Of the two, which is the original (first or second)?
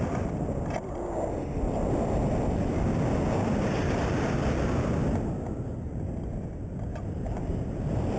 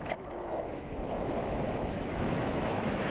first